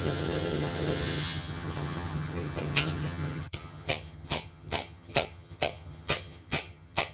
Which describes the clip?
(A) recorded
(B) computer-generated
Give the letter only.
B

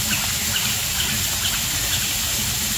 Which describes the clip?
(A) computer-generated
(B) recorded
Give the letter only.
B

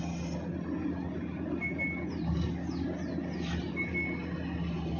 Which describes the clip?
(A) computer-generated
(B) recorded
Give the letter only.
B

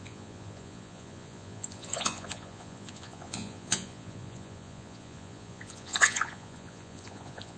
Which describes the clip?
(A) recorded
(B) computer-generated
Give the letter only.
B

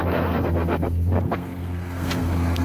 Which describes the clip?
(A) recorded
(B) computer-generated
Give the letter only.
B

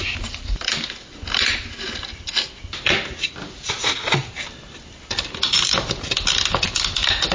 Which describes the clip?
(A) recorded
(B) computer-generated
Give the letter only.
A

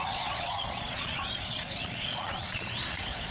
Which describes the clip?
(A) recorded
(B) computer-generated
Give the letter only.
B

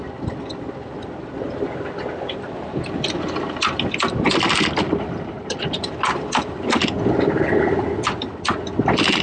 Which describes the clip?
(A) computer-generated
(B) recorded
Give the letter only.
B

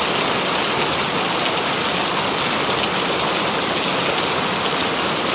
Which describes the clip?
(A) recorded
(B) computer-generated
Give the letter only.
A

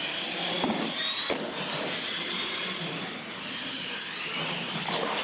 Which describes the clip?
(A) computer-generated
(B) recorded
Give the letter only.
B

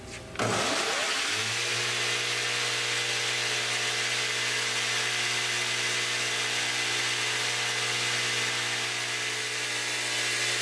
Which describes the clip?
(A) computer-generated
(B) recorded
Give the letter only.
B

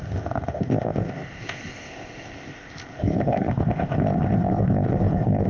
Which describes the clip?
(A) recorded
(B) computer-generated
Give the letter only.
B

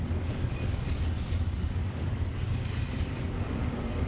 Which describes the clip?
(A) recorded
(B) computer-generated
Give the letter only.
B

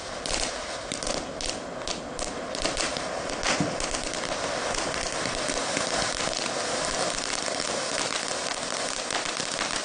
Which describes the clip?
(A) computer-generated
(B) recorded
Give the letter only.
B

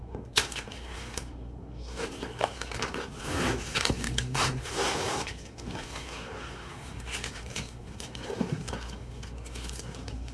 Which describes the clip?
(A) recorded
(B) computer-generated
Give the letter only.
B